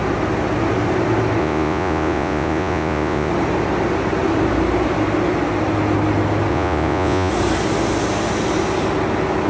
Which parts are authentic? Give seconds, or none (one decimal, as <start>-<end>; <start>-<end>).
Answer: 0.0-1.4; 3.3-6.5; 7.3-9.5